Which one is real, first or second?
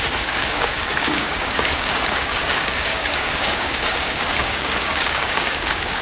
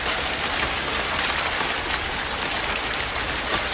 second